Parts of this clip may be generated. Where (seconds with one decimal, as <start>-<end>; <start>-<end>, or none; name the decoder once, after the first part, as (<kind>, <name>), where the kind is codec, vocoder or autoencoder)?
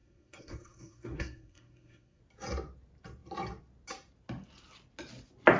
0.0-2.2 (codec, SNAC)